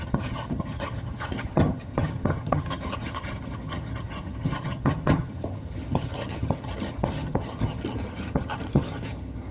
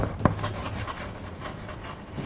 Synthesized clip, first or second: first